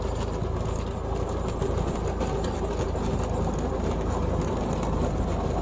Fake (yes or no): no